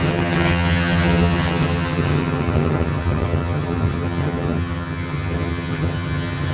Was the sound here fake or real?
fake